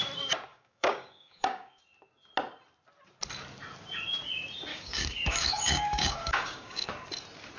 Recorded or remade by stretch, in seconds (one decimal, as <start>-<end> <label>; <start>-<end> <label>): 0.0-0.5 recorded; 0.5-1.8 remade; 1.8-4.7 recorded; 4.7-6.9 remade; 6.9-7.6 recorded